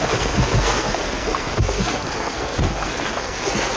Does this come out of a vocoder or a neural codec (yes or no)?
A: yes